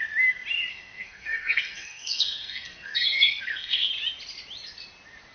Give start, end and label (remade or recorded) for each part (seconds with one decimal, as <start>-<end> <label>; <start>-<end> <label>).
0.0-0.7 recorded; 0.7-3.9 remade; 3.9-5.3 recorded